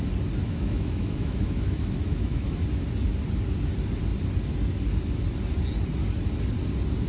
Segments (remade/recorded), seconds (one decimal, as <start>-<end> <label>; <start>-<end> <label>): 0.0-0.4 recorded; 0.4-2.6 remade; 2.6-7.1 recorded